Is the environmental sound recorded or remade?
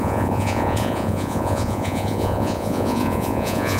remade